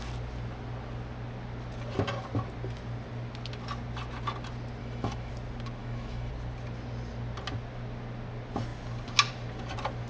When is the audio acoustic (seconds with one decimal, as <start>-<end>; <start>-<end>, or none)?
0.0-4.8; 5.3-5.8; 6.3-10.1